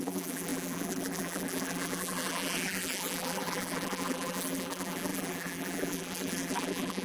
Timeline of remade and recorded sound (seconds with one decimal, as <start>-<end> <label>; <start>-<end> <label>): 0.0-7.0 remade